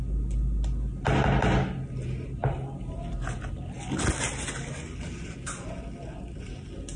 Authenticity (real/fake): real